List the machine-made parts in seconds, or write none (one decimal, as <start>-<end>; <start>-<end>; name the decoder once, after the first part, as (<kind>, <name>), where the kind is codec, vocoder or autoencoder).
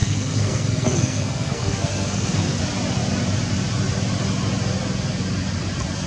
0.0-2.6 (codec, SNAC)